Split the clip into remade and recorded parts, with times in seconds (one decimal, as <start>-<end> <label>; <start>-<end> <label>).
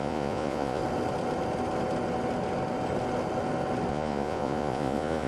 0.0-0.8 remade; 0.8-3.9 recorded; 3.9-5.3 remade